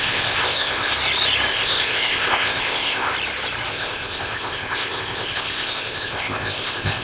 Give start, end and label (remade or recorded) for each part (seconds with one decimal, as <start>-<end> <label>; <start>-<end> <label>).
0.0-0.9 remade; 0.9-1.5 recorded; 1.5-3.1 remade; 3.1-3.7 recorded; 3.7-7.0 remade